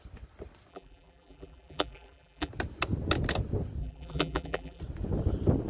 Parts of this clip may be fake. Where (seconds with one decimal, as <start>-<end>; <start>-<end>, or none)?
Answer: 0.7-2.5; 3.8-4.8

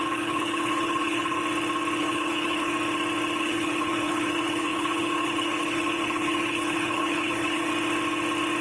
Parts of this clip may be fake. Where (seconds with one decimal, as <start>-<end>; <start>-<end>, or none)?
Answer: 0.0-1.4; 2.0-2.7; 3.4-7.7

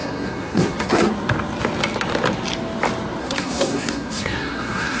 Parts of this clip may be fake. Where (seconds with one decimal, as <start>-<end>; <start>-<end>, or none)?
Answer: 0.0-1.1; 3.2-5.0

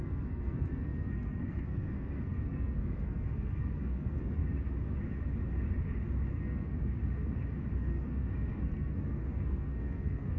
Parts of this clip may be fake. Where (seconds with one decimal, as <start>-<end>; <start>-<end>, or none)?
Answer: 0.0-4.4; 6.3-7.0; 7.8-10.4